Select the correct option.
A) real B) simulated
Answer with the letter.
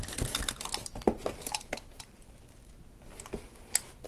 A